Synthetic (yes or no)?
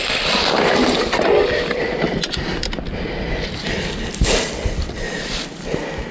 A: no